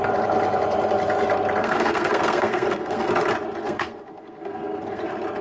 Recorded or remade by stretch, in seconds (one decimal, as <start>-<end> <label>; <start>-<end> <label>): 0.0-1.6 recorded; 1.6-3.1 remade; 3.1-3.6 recorded; 3.6-5.0 remade; 5.0-5.4 recorded

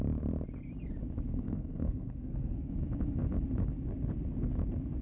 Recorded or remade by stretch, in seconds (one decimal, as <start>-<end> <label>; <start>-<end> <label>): 0.0-1.3 recorded; 1.3-2.7 remade; 2.7-5.0 recorded

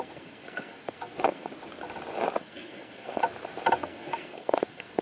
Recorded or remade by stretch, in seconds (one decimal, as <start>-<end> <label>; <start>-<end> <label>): 0.0-1.5 remade; 1.5-2.4 recorded; 2.4-3.2 remade; 3.2-3.8 recorded; 3.8-5.0 remade

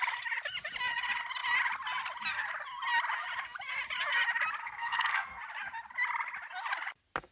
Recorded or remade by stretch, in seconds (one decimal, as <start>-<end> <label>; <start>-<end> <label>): 0.0-4.6 recorded; 4.6-5.4 remade; 5.4-7.3 recorded